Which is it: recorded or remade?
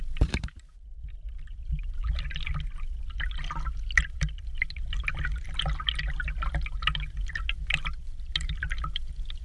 recorded